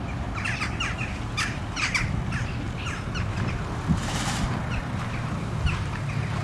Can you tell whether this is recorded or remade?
remade